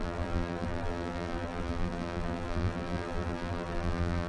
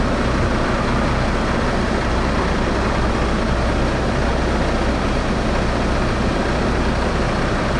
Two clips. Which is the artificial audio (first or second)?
first